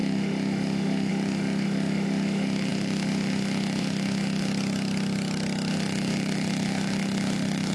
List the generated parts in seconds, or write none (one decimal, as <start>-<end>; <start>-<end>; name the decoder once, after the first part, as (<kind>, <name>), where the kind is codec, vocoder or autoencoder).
0.0-4.5 (autoencoder, DAC-VAE); 5.7-7.7